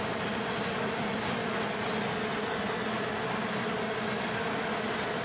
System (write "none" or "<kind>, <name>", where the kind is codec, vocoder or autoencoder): none